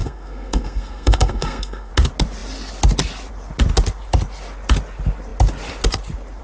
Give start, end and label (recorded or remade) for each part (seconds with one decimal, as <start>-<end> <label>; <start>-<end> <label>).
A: 0.0-1.9 remade; 1.9-6.4 recorded